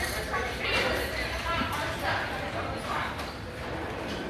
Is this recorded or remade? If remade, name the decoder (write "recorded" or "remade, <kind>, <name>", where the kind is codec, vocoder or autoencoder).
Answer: recorded